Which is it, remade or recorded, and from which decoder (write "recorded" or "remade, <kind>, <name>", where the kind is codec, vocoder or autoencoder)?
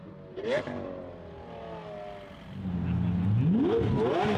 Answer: recorded